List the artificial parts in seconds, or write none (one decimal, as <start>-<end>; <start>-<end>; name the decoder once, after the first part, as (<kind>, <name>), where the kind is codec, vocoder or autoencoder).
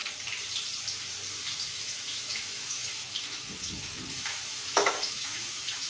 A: 1.7-5.9 (autoencoder, DAC-VAE)